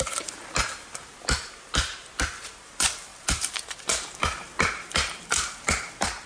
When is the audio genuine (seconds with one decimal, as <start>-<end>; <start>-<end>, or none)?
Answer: 0.4-2.6; 3.1-4.2